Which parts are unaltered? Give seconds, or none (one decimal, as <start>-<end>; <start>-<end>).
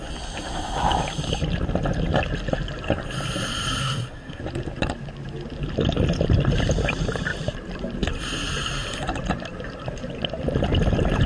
0.0-3.8; 4.4-11.3